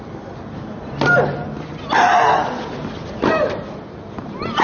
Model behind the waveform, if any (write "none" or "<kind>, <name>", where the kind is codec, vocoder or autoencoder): vocoder, BigVGAN v2